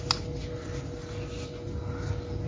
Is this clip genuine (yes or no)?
yes